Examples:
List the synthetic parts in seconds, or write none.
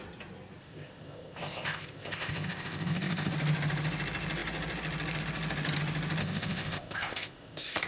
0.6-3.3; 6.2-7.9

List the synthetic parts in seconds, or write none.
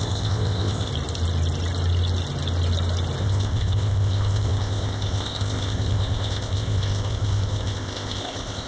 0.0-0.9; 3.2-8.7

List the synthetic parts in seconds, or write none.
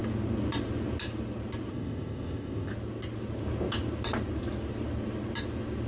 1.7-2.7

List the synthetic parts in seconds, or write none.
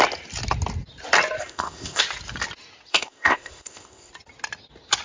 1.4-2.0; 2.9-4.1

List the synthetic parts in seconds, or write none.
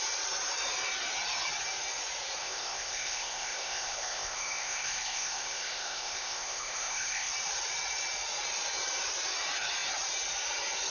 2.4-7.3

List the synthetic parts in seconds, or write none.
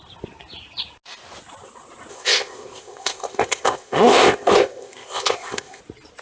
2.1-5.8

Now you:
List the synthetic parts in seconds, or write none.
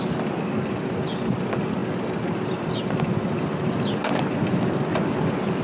none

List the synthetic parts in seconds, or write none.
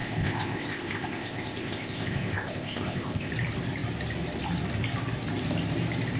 0.0-3.3